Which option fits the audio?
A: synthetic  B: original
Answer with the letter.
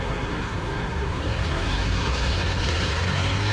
A